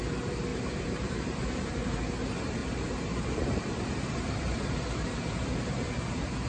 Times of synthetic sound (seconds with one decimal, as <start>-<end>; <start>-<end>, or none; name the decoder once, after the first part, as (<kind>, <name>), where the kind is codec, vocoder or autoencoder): 0.5-2.0 (vocoder, BigVGAN v2); 2.6-6.0